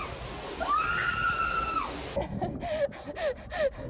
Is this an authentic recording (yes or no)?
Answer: yes